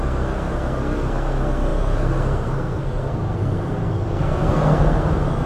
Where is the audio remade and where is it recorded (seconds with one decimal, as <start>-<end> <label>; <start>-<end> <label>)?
0.0-5.5 remade